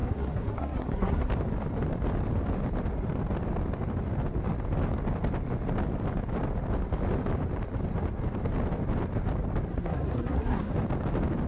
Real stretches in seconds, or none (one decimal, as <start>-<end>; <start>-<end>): 1.3-9.7; 10.7-11.5